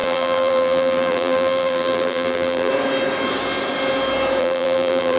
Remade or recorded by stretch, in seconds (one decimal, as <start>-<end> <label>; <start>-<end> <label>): 0.0-2.7 remade; 2.7-4.4 recorded; 4.4-5.2 remade